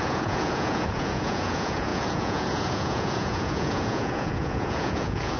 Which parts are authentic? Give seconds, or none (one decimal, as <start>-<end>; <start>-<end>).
none